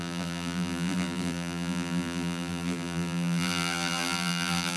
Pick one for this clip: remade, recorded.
remade